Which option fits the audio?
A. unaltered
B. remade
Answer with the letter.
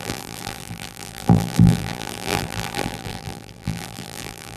B